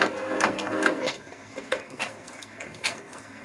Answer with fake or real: fake